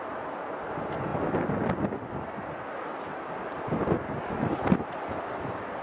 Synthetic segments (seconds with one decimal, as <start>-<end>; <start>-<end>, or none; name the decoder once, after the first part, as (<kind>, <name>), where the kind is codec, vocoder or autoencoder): none